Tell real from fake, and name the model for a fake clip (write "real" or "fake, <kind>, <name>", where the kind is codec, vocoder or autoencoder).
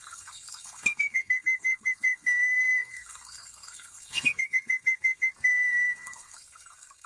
fake, codec, SNAC